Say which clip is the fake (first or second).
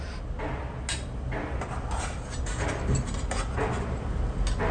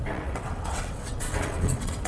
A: second